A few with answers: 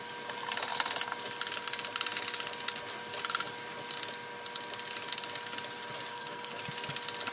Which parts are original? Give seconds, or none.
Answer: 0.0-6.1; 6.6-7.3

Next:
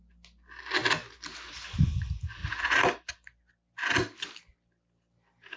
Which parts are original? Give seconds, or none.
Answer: 0.0-5.6

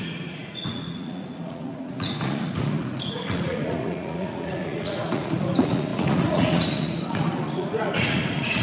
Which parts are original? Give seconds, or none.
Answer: none

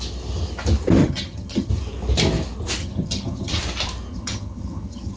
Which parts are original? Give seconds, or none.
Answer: 0.0-1.0; 1.7-2.8; 3.5-4.1

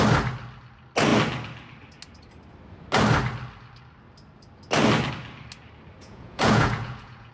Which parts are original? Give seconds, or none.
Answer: 0.0-6.0